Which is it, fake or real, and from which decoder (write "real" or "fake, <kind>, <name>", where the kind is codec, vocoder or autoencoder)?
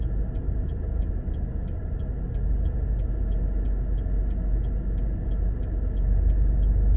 real